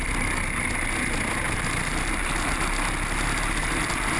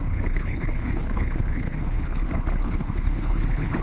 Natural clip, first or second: first